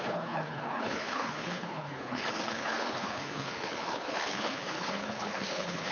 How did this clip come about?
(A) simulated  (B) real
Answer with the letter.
A